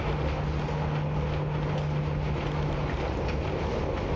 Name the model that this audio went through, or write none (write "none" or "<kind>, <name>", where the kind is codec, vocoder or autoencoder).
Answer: none